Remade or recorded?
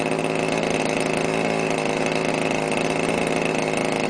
recorded